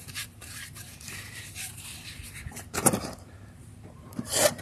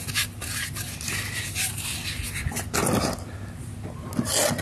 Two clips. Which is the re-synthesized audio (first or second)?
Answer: first